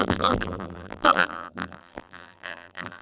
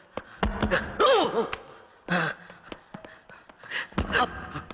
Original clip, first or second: second